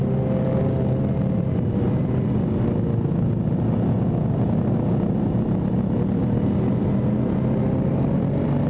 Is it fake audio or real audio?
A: real